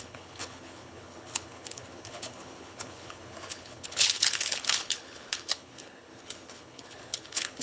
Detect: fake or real fake